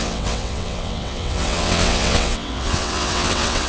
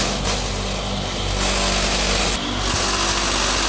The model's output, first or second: first